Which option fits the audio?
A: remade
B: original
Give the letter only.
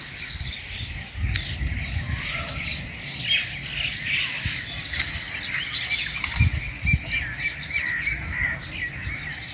B